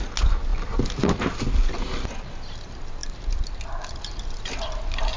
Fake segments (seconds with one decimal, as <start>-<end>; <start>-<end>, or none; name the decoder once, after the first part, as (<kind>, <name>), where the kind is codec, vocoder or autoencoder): 3.0-4.0 (vocoder, BigVGAN v2)